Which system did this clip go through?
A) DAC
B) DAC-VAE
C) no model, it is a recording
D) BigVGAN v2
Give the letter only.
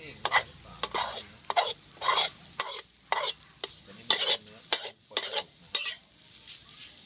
C